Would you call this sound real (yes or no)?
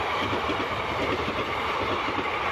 yes